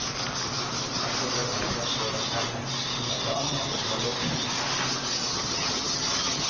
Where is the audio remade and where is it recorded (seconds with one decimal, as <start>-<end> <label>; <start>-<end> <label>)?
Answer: 0.0-3.3 recorded; 3.3-3.8 remade; 3.8-5.3 recorded; 5.3-6.5 remade